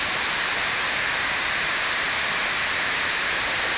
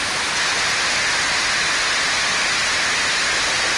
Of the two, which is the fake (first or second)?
first